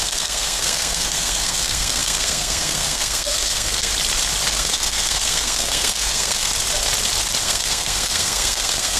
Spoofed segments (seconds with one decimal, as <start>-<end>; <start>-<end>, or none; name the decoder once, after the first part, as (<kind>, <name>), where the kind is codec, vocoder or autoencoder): 0.0-3.9 (codec, SNAC); 4.5-6.5; 7.4-9.0